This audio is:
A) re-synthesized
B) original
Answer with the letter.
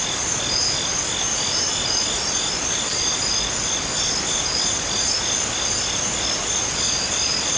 B